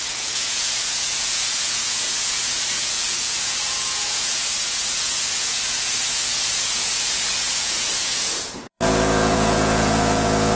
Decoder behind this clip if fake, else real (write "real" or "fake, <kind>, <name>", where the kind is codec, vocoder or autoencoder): fake, vocoder, Vocos